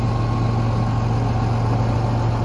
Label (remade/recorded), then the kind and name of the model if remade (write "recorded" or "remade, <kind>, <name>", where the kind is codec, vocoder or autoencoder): recorded